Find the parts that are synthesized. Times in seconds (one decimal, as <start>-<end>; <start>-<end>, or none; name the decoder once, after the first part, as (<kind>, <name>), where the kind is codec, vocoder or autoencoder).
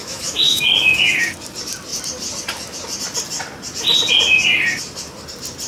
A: 0.0-1.3 (autoencoder, DAC-VAE)